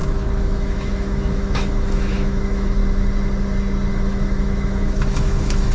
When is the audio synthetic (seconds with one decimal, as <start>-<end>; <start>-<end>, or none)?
0.0-2.8; 3.9-5.7